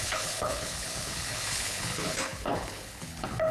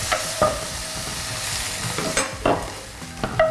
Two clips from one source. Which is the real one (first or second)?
second